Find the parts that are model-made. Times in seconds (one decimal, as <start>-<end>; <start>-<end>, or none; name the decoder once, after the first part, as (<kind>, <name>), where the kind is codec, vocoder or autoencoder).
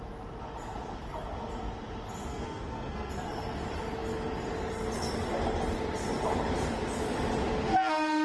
2.3-3.1 (codec, SNAC)